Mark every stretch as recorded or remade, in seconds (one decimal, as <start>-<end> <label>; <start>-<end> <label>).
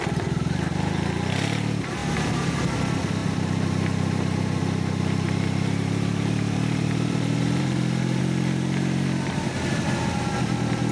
0.0-2.0 recorded; 2.0-2.7 remade; 2.7-3.2 recorded; 3.2-8.2 remade; 8.2-10.9 recorded